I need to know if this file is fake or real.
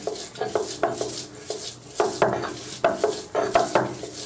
real